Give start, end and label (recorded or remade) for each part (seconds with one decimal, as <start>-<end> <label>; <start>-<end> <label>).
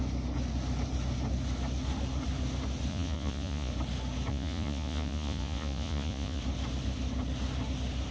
0.0-2.9 recorded; 2.9-3.7 remade; 3.7-4.3 recorded; 4.3-6.4 remade; 6.4-8.1 recorded